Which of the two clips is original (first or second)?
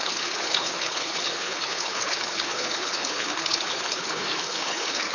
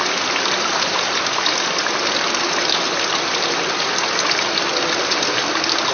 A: second